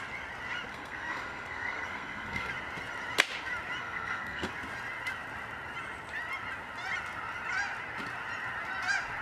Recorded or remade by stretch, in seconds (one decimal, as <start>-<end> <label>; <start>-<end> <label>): 0.0-0.7 recorded; 0.7-2.5 remade; 2.5-3.8 recorded; 3.8-4.5 remade; 4.5-9.2 recorded